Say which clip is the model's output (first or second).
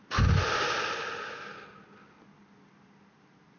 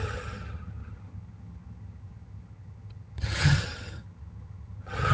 second